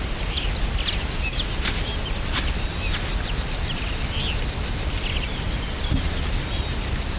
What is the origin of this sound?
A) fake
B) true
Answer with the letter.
B